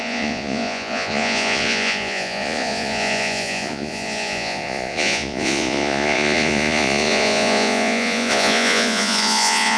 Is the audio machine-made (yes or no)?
yes